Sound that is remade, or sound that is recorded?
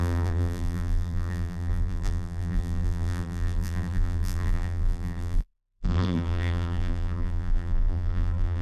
remade